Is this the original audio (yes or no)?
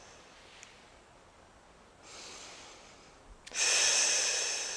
yes